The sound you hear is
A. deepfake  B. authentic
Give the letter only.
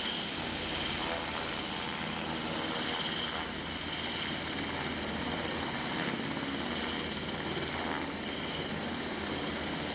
B